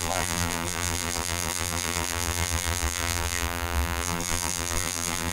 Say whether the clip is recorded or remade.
remade